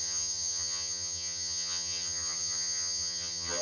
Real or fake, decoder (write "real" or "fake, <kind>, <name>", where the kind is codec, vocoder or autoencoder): fake, vocoder, HiFi-GAN